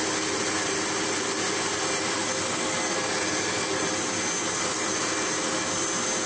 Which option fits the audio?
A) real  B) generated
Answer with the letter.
A